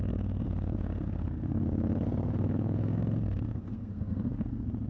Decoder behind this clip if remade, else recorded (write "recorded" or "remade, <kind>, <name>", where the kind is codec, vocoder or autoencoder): remade, codec, SNAC